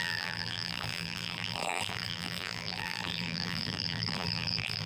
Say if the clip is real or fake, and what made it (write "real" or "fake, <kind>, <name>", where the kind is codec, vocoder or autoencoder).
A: fake, vocoder, BigVGAN v2